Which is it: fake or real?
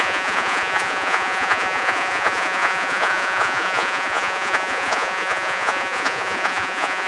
fake